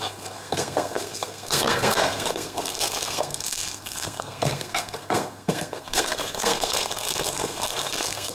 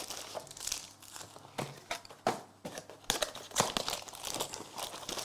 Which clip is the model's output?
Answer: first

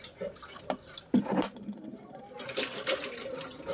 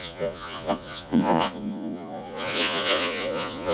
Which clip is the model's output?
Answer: second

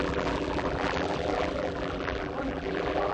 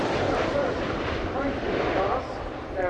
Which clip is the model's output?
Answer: first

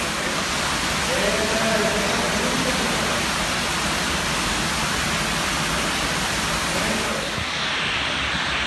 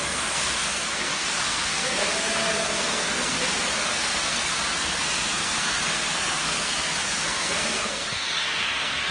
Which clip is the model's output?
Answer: second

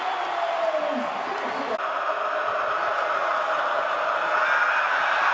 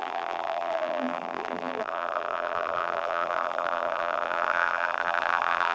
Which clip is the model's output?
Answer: second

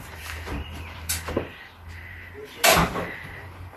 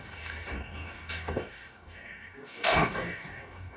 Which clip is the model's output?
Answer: second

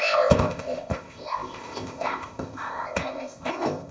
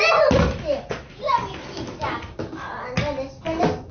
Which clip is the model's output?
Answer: first